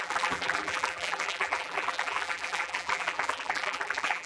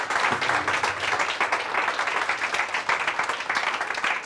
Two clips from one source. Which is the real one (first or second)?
second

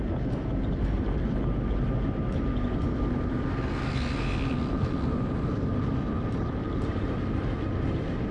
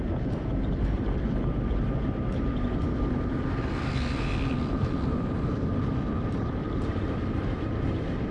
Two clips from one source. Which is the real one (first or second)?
first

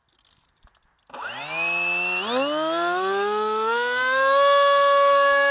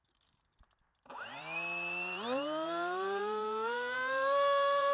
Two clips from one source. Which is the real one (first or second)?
first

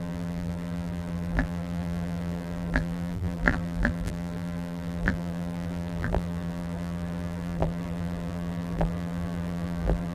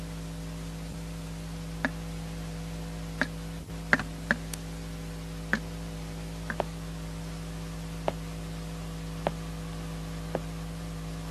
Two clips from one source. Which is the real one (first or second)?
second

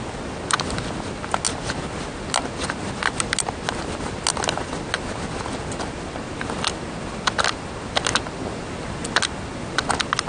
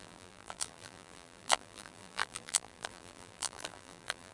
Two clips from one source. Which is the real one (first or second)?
first